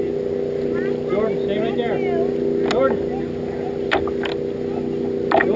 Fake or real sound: real